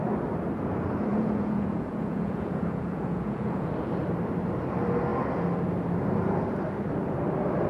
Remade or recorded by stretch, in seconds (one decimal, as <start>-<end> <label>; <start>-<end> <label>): 0.0-1.1 recorded; 1.1-3.7 remade; 3.7-7.7 recorded